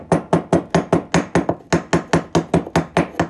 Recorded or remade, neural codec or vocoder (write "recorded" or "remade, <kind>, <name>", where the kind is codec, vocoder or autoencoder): recorded